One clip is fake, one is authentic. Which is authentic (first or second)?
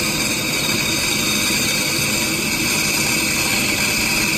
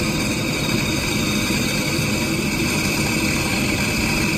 first